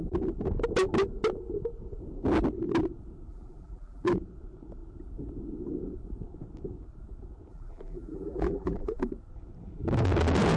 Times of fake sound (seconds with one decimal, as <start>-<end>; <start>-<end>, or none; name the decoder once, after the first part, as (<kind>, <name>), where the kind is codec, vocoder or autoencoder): 3.3-4.1 (vocoder, BigVGAN v2); 7.5-9.1